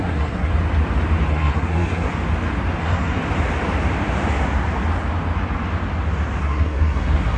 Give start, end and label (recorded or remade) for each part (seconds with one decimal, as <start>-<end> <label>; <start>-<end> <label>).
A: 0.0-0.5 remade; 0.5-1.3 recorded; 1.3-2.1 remade; 2.1-2.8 recorded; 2.8-3.2 remade; 3.2-6.4 recorded; 6.4-7.4 remade